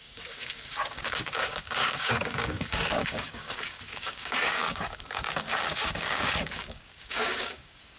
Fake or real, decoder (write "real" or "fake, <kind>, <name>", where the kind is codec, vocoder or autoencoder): fake, codec, DAC